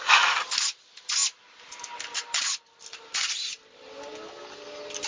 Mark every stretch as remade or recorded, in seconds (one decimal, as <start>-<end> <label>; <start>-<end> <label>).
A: 0.0-5.1 recorded